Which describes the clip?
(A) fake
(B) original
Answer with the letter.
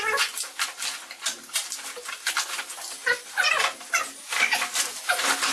B